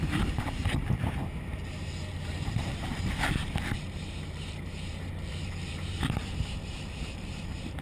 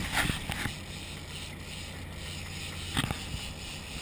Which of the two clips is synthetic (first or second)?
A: first